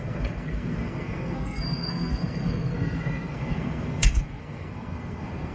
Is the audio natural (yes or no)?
no